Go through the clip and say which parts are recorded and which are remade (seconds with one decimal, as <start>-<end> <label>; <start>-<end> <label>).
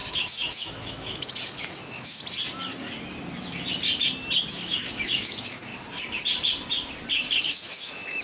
0.0-2.2 remade; 2.2-4.5 recorded; 4.5-5.7 remade; 5.7-7.4 recorded; 7.4-8.2 remade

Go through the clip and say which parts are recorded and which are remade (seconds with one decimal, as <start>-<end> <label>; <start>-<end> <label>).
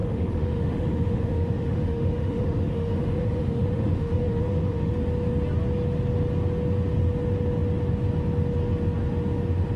0.0-4.9 remade; 4.9-9.8 recorded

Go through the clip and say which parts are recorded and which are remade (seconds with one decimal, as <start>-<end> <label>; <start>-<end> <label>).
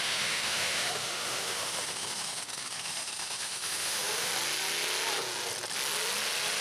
0.0-4.3 remade; 4.3-6.6 recorded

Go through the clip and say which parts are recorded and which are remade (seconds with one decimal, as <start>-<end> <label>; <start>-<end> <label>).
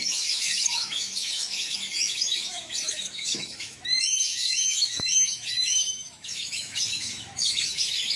0.0-8.2 remade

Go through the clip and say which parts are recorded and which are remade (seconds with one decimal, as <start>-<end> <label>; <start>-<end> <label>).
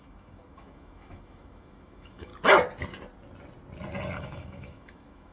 0.0-2.3 remade; 2.3-4.2 recorded; 4.2-5.3 remade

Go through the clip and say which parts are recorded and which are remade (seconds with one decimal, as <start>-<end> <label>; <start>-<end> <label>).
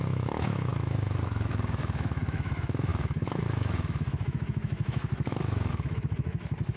0.0-6.8 remade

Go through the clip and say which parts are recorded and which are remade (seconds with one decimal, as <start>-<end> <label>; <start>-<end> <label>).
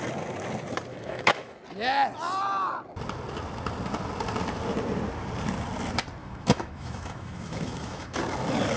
0.0-0.9 recorded; 0.9-1.6 remade; 1.6-6.2 recorded; 6.2-8.2 remade; 8.2-8.8 recorded